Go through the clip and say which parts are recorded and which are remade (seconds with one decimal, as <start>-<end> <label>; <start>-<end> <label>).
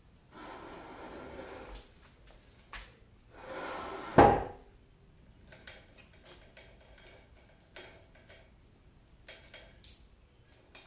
0.0-10.9 recorded